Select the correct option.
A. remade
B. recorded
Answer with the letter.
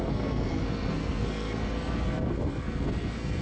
A